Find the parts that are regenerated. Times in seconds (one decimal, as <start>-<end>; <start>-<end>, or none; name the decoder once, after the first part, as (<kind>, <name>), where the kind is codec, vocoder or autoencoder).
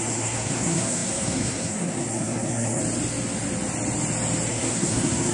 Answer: 0.0-2.8 (codec, SNAC); 4.5-5.3